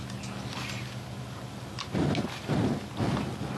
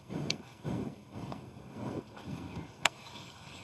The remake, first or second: second